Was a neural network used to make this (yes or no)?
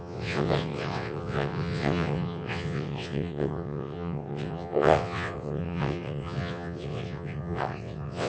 yes